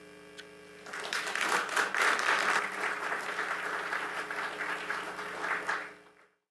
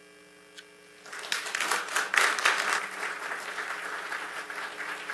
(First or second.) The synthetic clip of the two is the first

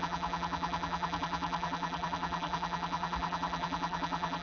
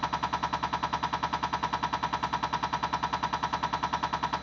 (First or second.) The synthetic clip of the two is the first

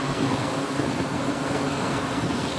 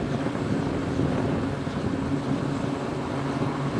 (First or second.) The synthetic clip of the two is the first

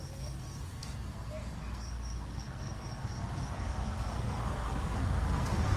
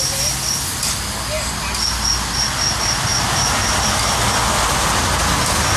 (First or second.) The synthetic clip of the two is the first